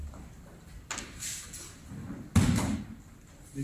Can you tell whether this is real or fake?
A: real